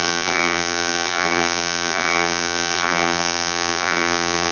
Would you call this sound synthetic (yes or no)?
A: yes